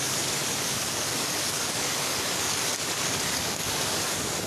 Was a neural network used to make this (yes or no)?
yes